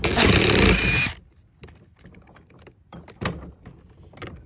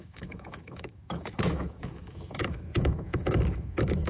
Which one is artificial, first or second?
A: second